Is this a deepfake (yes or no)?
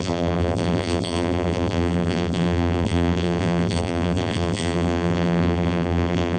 yes